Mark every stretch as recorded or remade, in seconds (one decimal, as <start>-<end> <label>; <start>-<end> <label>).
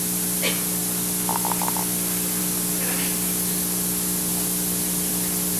0.0-5.6 recorded